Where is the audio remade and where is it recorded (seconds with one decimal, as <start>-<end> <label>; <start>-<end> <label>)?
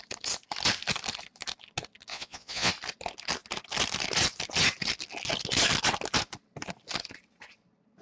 0.0-2.1 recorded; 2.1-2.7 remade; 2.7-8.0 recorded